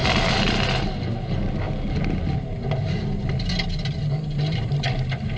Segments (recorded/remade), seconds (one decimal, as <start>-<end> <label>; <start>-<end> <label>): 0.0-5.4 recorded